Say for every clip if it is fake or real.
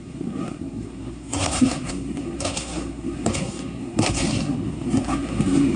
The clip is fake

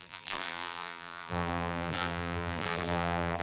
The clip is fake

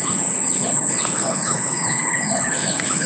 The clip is fake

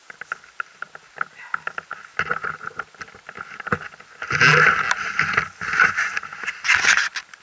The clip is real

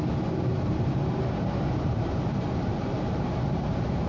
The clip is fake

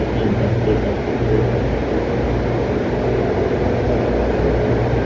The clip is real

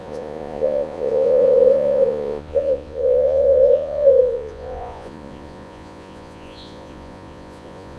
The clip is fake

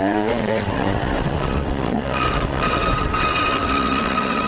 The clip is fake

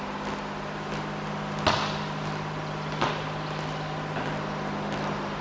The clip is real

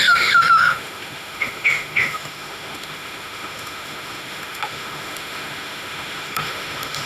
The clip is fake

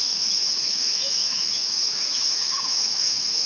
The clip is fake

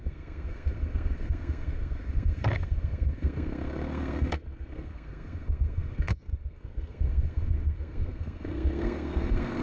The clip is fake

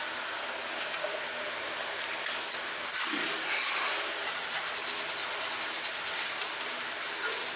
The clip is real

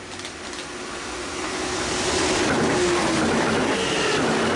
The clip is real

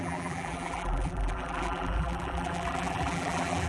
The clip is fake